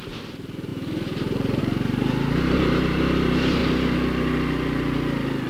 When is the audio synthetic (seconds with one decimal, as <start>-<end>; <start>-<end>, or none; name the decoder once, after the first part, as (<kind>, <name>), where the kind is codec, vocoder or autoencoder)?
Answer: 0.0-3.6 (vocoder, BigVGAN v2)